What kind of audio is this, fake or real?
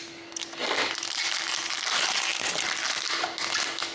real